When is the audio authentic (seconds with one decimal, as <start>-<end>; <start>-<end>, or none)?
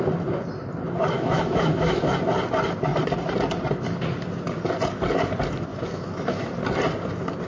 0.0-1.0; 2.1-5.7; 6.5-7.5